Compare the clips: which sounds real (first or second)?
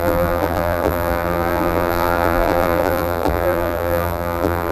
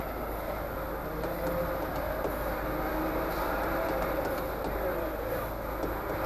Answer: second